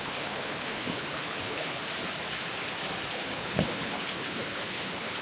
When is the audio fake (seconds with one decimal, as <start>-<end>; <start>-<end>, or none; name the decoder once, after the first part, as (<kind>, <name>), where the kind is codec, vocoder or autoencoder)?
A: 0.0-1.8 (codec, HILCodec); 3.1-5.2